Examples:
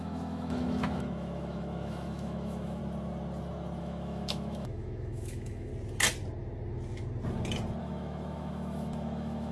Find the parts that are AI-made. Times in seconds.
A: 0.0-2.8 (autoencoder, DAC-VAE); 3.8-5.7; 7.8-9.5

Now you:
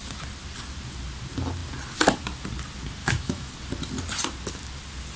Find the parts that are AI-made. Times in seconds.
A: 3.0-3.5 (autoencoder, DAC-VAE)

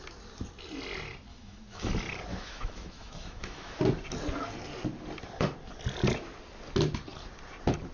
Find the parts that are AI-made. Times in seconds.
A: 1.3-1.9 (autoencoder, DAC-VAE); 2.3-3.8

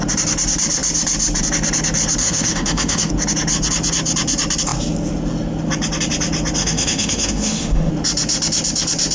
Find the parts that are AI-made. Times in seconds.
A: 2.2-3.1 (autoencoder, DAC-VAE); 6.6-7.9

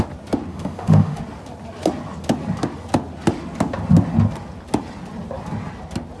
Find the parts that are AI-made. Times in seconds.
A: 0.5-1.2 (autoencoder, DAC-VAE)

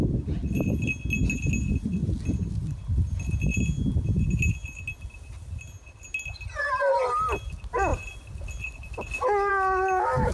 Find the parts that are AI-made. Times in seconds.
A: none